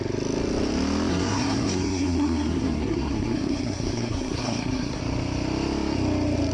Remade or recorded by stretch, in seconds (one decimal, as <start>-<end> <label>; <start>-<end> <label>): 0.0-1.1 recorded; 1.1-5.0 remade; 5.0-6.5 recorded